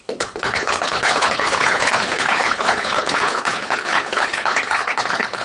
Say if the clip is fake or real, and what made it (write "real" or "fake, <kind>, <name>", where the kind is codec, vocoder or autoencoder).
fake, codec, HILCodec